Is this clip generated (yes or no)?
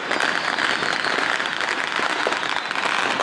no